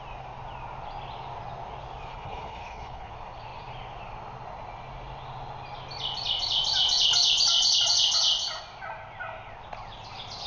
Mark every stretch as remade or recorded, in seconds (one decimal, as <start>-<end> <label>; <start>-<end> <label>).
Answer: 0.0-2.1 recorded; 2.1-3.1 remade; 3.1-10.5 recorded